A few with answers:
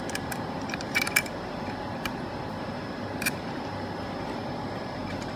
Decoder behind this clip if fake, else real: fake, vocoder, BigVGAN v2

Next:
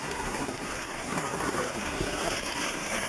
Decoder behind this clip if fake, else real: fake, codec, SNAC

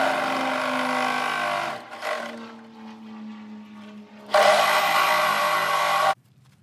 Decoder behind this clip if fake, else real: real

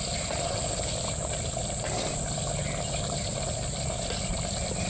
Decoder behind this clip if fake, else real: real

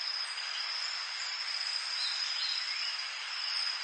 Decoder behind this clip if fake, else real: real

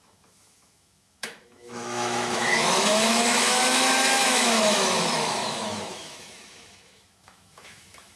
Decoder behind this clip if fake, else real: fake, autoencoder, DAC-VAE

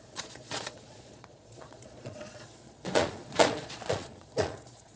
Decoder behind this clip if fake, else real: fake, vocoder, Vocos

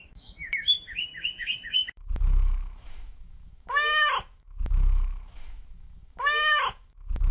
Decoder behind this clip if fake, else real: fake, autoencoder, DAC-VAE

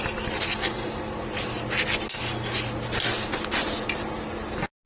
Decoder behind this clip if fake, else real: real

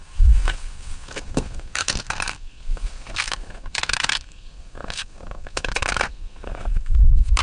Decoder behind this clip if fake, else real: fake, codec, SNAC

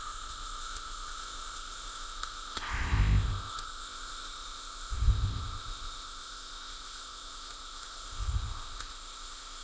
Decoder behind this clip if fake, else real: fake, codec, ZipCodec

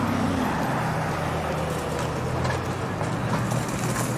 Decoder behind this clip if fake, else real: real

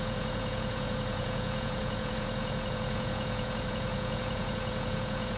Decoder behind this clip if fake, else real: fake, vocoder, Vocos